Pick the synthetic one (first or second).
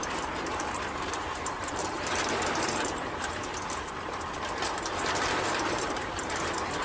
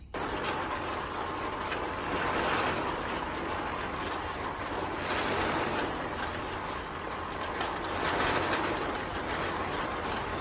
first